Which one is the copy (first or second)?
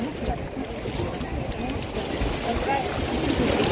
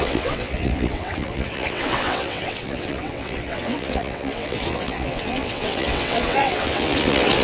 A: second